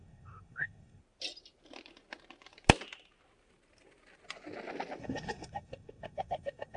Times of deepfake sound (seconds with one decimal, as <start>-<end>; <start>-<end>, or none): 0.0-1.0; 5.0-6.8